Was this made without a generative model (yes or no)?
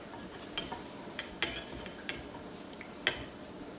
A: yes